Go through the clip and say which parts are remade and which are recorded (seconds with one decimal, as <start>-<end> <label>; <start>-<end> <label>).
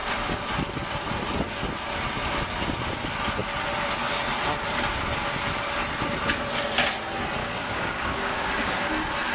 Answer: 0.0-7.4 recorded; 7.4-8.9 remade; 8.9-9.3 recorded